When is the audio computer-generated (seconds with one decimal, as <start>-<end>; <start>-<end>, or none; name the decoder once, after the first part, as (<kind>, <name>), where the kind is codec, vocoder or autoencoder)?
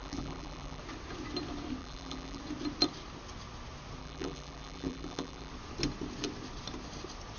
0.0-0.8 (vocoder, BigVGAN v2); 1.8-2.4; 4.0-5.5